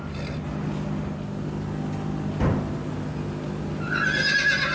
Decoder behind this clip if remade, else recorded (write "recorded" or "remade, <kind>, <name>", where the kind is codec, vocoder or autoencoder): recorded